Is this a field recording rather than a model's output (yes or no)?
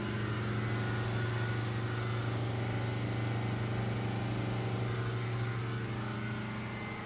yes